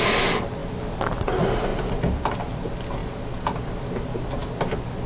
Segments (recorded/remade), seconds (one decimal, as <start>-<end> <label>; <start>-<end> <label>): 0.0-5.1 recorded